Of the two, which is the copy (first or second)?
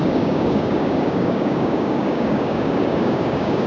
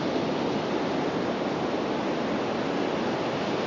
first